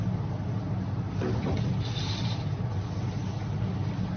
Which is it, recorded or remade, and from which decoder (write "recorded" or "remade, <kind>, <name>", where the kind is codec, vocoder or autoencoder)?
recorded